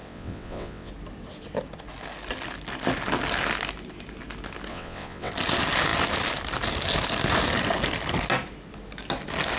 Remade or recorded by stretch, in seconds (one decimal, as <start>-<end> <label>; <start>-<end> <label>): 0.0-0.9 remade; 0.9-4.7 recorded; 4.7-5.3 remade; 5.3-9.6 recorded

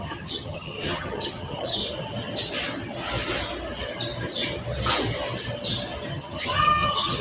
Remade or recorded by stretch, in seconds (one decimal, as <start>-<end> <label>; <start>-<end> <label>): 0.0-1.8 remade; 1.8-6.1 recorded; 6.1-7.2 remade

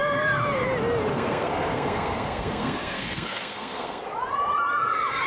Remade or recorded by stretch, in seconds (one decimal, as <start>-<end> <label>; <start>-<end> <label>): 0.0-1.1 recorded; 1.1-4.0 remade; 4.0-5.3 recorded

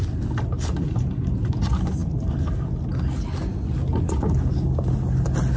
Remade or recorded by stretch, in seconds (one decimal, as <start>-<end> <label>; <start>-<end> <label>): 0.0-5.6 recorded